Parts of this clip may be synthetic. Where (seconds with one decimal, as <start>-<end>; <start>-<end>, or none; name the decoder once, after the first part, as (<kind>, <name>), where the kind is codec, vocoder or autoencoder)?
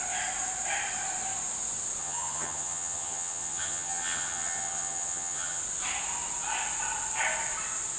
2.0-5.6 (vocoder, HiFi-GAN)